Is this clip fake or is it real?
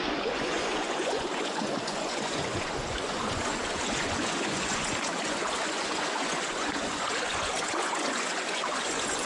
fake